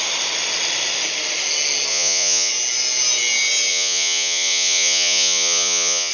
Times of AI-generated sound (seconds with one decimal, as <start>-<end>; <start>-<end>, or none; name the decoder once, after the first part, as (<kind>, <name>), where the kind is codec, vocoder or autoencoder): 1.9-2.5 (vocoder, Vocos); 3.7-6.1